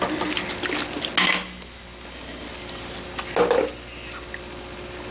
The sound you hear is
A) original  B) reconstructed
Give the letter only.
A